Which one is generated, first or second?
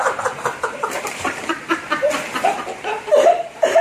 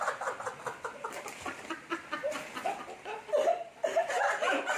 first